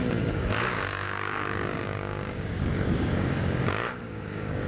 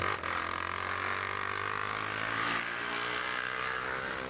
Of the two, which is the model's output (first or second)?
first